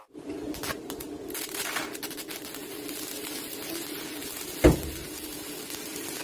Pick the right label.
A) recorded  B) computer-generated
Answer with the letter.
A